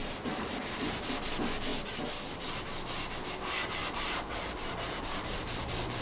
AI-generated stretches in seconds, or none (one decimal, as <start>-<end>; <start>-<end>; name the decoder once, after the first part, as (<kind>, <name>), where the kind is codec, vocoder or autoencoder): 0.0-1.0 (vocoder, BigVGAN v2); 3.8-6.0